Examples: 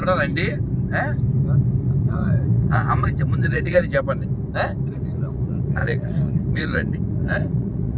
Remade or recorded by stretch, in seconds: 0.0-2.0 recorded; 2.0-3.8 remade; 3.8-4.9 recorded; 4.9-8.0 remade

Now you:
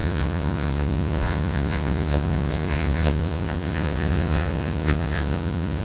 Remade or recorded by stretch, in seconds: 0.0-5.8 remade

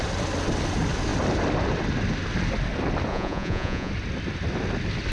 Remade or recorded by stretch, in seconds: 0.0-3.1 recorded; 3.1-3.9 remade; 3.9-5.1 recorded

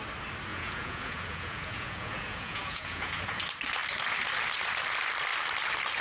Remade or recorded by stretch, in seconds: 0.0-0.5 recorded; 0.5-3.4 remade; 3.4-6.0 recorded

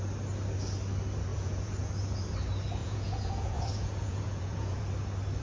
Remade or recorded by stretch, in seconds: 0.0-1.3 recorded; 1.3-1.9 remade; 1.9-2.8 recorded; 2.8-4.8 remade; 4.8-5.4 recorded

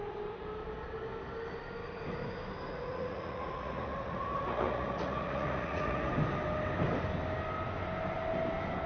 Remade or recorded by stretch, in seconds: 0.0-2.7 recorded; 2.7-6.1 remade; 6.1-8.9 recorded

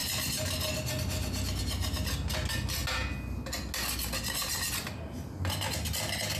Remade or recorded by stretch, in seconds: 0.0-6.4 recorded

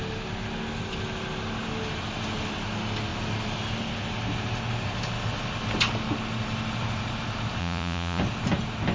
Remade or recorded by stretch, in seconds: 0.0-7.6 recorded; 7.6-8.2 remade; 8.2-8.9 recorded